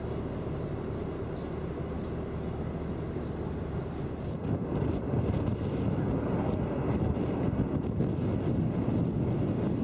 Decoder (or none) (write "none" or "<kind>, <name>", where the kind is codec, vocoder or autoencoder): none